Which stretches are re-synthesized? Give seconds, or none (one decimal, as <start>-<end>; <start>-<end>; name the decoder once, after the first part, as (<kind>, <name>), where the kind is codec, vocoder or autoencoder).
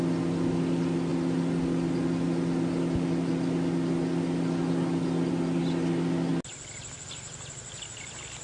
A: none